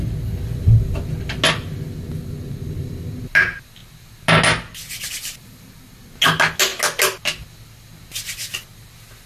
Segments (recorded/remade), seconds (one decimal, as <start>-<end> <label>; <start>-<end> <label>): 0.0-9.3 recorded